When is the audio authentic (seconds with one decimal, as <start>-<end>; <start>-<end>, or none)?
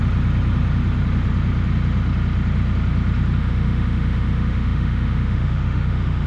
0.0-3.4